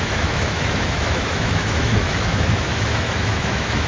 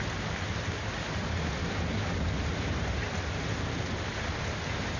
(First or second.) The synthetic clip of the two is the first